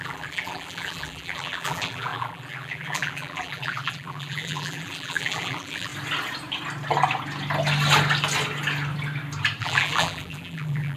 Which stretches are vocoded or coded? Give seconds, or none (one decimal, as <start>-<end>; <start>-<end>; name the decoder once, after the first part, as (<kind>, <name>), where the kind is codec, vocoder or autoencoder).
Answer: 0.0-5.9 (vocoder, BigVGAN v2); 9.6-11.0